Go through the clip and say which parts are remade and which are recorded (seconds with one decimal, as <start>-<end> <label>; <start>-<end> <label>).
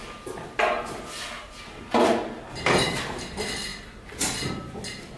0.0-5.2 recorded